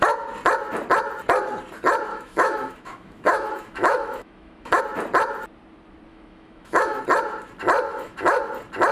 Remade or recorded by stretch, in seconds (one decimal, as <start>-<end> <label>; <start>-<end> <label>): 0.0-2.1 recorded; 2.1-4.8 remade; 4.8-6.1 recorded; 6.1-7.0 remade; 7.0-7.9 recorded; 7.9-8.4 remade; 8.4-8.9 recorded